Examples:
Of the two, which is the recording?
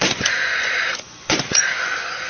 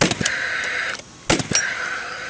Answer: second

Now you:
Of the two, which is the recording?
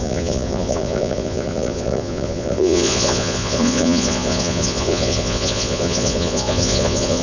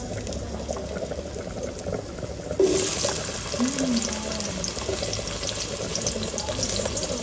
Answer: second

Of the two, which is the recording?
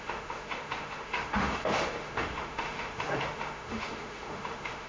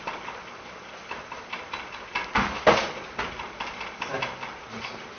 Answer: second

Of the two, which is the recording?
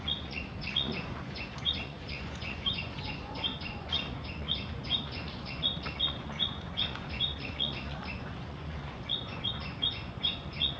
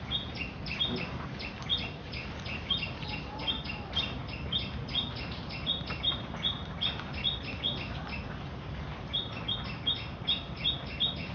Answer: second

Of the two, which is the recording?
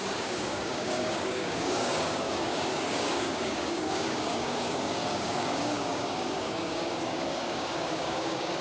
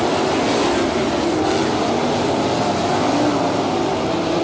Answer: second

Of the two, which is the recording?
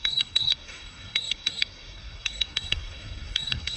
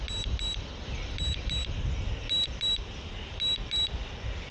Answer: second